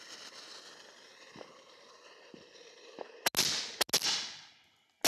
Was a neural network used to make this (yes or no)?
no